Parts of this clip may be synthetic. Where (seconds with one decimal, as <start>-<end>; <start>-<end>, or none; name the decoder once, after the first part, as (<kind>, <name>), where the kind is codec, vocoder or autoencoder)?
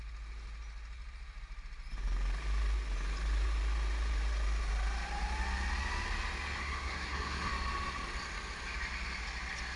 6.6-7.5 (codec, SNAC)